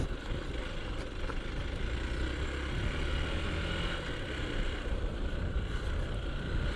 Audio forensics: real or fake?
real